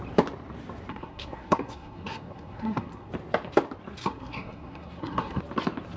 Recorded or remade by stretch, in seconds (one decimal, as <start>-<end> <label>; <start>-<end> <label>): 0.0-0.9 recorded; 0.9-3.1 remade; 3.1-4.0 recorded; 4.0-5.4 remade; 5.4-6.0 recorded